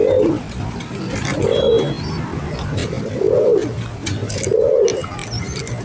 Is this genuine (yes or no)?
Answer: yes